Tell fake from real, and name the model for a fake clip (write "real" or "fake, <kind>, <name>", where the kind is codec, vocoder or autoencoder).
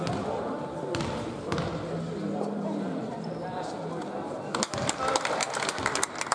real